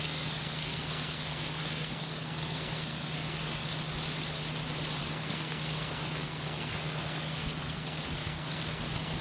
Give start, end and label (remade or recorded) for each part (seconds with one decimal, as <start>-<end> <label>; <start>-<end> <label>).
0.0-3.7 remade; 3.7-5.0 recorded; 5.0-9.2 remade